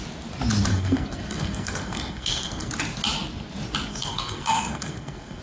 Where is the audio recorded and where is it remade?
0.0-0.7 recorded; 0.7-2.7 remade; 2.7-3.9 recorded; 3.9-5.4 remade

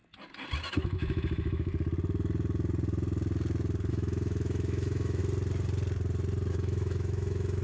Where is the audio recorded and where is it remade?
0.0-0.7 recorded; 0.7-1.7 remade; 1.7-3.9 recorded; 3.9-5.2 remade; 5.2-6.5 recorded; 6.5-7.6 remade

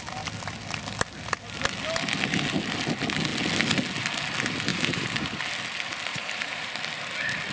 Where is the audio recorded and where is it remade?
0.0-4.7 recorded; 4.7-5.4 remade; 5.4-6.1 recorded; 6.1-6.7 remade; 6.7-7.5 recorded

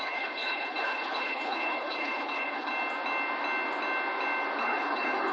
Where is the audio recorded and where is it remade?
0.0-2.7 remade; 2.7-4.6 recorded; 4.6-5.3 remade

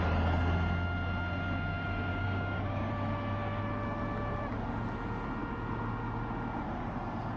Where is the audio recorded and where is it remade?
0.0-2.1 recorded; 2.1-2.9 remade; 2.9-7.4 recorded

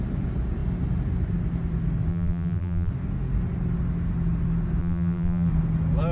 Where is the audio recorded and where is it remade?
0.0-2.1 recorded; 2.1-2.9 remade; 2.9-4.8 recorded; 4.8-5.5 remade; 5.5-6.1 recorded